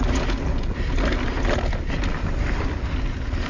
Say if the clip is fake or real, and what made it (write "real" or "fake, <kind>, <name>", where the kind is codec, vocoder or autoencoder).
real